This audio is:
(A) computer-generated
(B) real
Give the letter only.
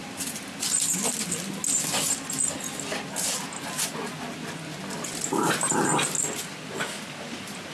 B